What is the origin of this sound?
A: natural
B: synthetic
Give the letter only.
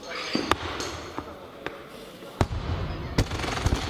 A